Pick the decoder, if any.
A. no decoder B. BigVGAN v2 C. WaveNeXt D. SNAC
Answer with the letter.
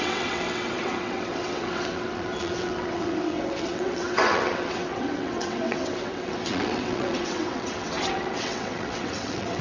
C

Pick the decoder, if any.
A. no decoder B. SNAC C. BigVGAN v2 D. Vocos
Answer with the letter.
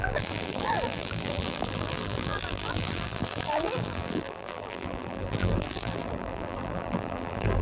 C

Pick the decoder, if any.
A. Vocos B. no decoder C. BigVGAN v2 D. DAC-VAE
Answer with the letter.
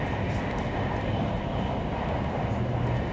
B